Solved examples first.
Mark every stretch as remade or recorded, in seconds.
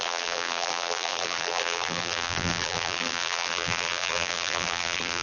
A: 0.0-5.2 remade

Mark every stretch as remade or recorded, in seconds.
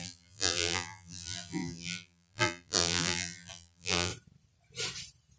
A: 0.0-4.1 remade; 4.1-5.4 recorded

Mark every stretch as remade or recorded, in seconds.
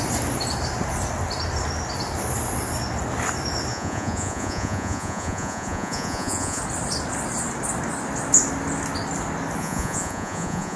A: 0.0-3.7 recorded; 3.7-6.6 remade; 6.6-9.6 recorded; 9.6-10.8 remade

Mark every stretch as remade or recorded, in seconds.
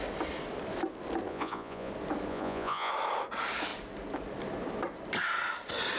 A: 0.0-1.3 recorded; 1.3-1.9 remade; 1.9-2.3 recorded; 2.3-2.9 remade; 2.9-6.0 recorded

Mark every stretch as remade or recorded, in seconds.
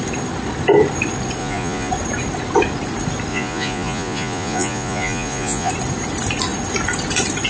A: 0.0-1.4 recorded; 1.4-1.9 remade; 1.9-3.3 recorded; 3.3-5.7 remade; 5.7-7.5 recorded